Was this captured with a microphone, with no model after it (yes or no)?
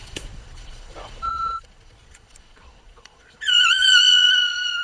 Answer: no